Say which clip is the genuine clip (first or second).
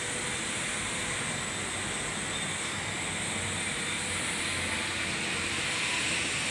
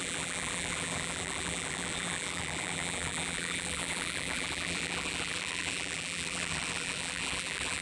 first